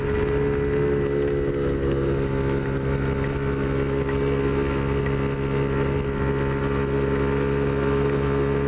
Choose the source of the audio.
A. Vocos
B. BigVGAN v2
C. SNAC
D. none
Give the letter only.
D